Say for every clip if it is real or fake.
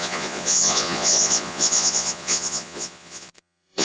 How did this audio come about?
fake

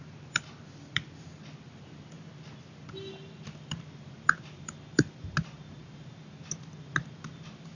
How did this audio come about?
real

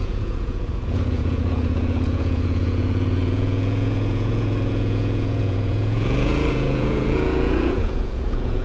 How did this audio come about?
fake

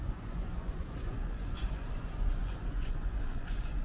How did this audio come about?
fake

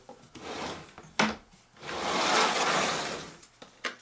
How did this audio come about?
real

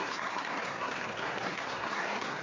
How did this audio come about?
fake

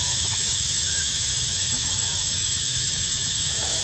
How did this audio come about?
fake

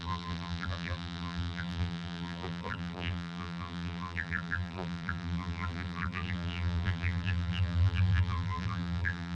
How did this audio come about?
fake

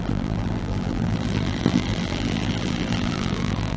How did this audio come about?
fake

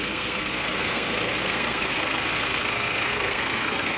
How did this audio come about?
fake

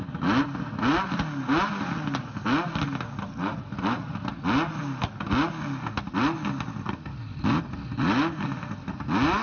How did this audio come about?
real